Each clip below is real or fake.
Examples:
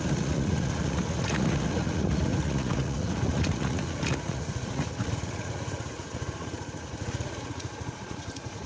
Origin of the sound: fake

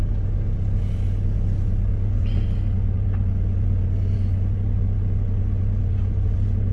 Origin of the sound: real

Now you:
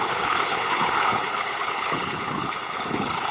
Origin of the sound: fake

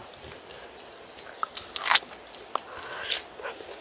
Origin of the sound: real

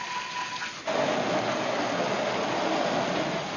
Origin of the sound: real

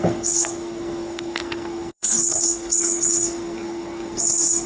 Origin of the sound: fake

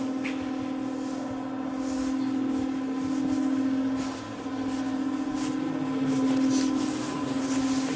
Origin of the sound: real